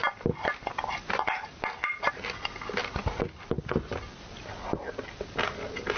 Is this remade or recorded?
recorded